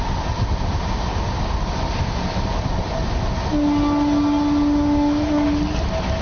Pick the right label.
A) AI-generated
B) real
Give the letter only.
B